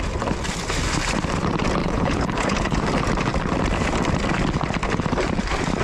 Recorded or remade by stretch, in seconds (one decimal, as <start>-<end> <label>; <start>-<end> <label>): 0.0-1.8 recorded; 1.8-2.8 remade; 2.8-5.8 recorded